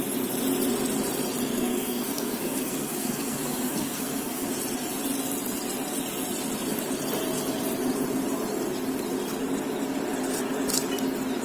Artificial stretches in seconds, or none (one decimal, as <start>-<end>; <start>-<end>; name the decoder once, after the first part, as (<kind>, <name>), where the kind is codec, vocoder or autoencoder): 1.5-4.5 (codec, SNAC)

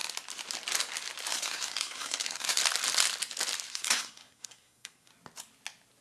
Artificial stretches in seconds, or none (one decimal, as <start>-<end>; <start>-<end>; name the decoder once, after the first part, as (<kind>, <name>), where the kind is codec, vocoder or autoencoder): 1.3-2.6 (codec, SNAC); 3.7-5.1

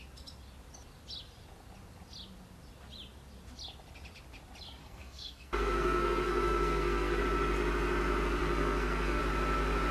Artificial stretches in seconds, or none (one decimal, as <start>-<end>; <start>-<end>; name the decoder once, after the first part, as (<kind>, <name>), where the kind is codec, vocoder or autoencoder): 4.8-7.2 (codec, SNAC); 8.4-9.2

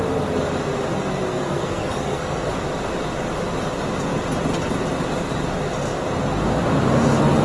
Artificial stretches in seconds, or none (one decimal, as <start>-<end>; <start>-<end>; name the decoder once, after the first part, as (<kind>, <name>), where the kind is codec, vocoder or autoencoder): 1.3-2.5 (codec, SNAC)

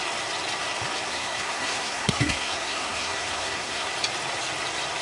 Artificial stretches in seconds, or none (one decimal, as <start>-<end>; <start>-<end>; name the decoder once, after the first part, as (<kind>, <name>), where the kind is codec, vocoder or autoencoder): 1.1-3.9 (codec, SNAC)